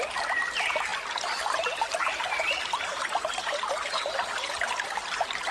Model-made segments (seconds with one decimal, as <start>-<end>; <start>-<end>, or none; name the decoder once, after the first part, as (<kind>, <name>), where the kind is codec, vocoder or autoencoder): none